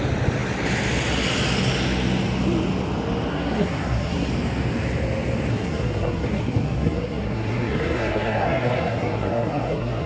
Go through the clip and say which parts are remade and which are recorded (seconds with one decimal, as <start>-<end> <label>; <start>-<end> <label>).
0.0-3.3 recorded; 3.3-4.3 remade; 4.3-5.5 recorded; 5.5-10.1 remade